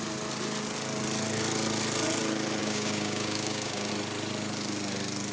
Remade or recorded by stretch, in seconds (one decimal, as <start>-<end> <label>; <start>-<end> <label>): 0.0-2.6 recorded; 2.6-3.9 remade; 3.9-5.3 recorded